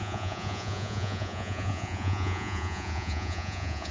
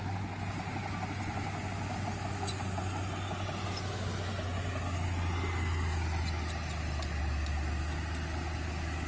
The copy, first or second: first